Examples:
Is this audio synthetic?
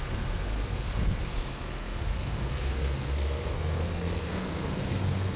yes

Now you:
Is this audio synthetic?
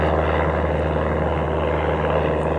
no